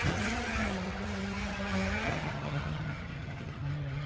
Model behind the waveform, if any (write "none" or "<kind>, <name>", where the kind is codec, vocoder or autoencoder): vocoder, HiFi-GAN